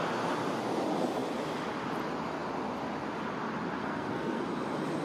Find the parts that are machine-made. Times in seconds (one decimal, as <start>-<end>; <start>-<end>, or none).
3.8-4.4